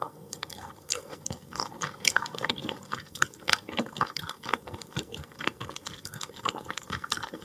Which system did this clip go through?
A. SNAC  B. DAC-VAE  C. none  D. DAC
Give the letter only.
A